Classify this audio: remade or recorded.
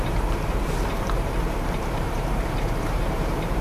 remade